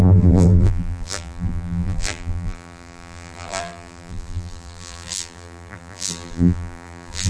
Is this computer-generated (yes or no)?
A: yes